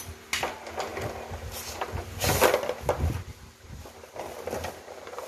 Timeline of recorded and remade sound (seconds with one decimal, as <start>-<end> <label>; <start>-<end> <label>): 0.0-5.3 recorded